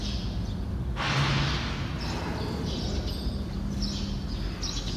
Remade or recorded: recorded